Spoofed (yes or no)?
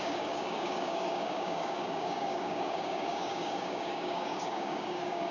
yes